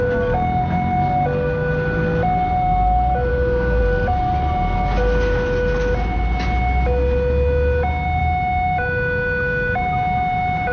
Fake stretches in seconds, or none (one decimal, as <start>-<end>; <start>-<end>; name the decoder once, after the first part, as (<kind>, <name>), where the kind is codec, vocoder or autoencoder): 3.3-3.8 (codec, DAC)